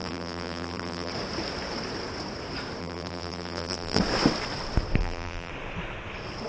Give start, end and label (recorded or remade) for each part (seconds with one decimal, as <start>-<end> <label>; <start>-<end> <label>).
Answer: 0.0-1.1 remade; 1.1-2.8 recorded; 2.8-4.0 remade; 4.0-5.0 recorded; 5.0-5.5 remade; 5.5-6.5 recorded